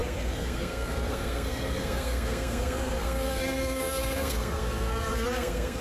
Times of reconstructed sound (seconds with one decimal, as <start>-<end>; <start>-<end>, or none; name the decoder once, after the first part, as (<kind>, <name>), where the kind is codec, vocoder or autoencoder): 0.0-5.8 (codec, SNAC)